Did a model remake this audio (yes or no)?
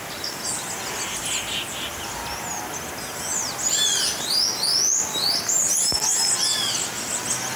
no